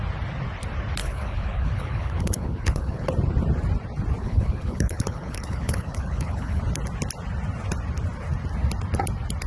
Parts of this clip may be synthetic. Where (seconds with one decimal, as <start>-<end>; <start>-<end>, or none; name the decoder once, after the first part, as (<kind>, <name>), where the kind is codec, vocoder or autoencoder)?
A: 1.0-3.1 (codec, HILCodec); 4.2-6.6